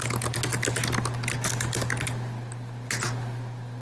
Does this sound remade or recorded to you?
recorded